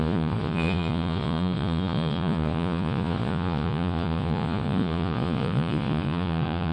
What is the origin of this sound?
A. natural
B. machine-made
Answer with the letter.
B